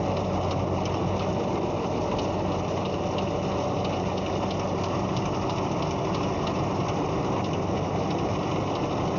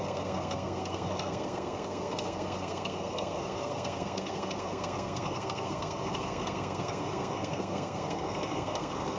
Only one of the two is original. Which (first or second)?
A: first